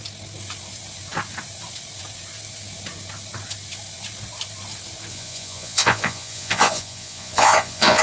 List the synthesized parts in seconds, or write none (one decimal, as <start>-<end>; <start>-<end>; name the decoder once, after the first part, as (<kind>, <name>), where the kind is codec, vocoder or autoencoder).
5.1-8.0 (vocoder, Vocos)